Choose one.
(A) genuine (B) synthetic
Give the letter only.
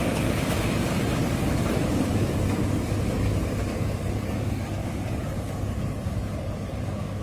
B